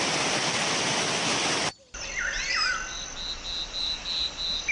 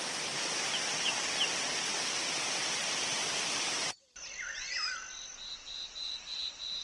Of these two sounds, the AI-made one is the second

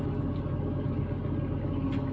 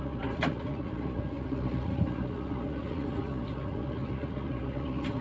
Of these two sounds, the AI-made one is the second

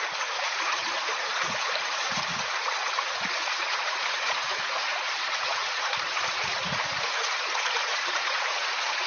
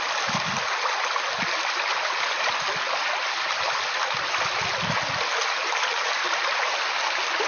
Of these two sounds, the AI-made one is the first